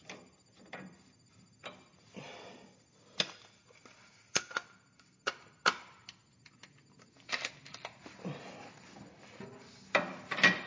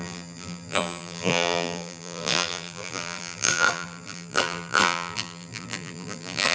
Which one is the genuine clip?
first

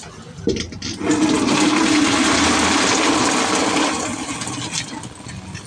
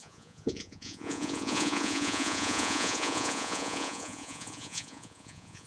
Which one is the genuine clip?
first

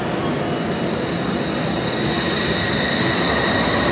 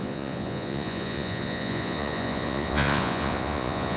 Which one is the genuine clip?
first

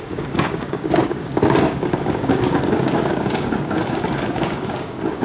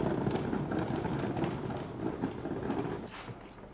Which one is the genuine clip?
second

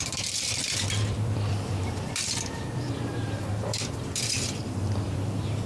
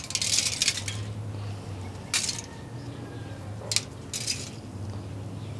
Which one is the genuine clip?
second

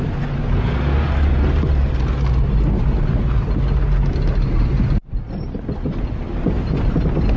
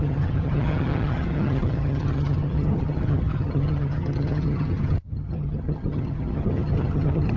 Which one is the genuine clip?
first